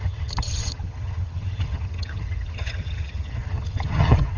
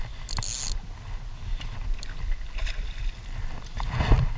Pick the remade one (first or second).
first